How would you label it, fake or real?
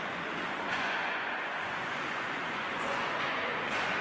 fake